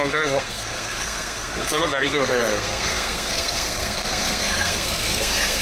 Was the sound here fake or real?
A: fake